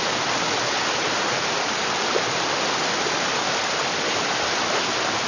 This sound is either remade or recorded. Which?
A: recorded